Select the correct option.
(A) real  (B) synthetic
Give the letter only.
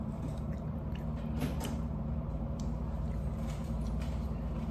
B